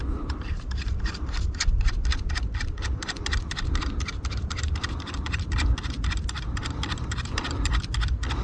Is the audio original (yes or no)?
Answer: no